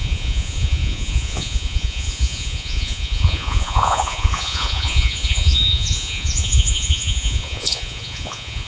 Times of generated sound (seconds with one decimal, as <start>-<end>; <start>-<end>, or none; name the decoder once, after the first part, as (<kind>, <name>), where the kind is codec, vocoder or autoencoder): 0.0-8.7 (vocoder, Vocos)